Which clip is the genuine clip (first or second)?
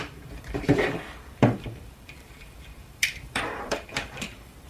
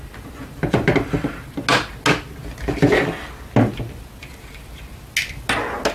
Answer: second